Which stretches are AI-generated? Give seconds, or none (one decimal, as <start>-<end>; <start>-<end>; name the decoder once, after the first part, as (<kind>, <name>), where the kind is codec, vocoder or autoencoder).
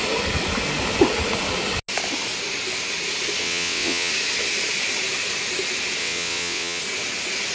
3.4-4.1 (vocoder, WaveNeXt); 6.0-6.8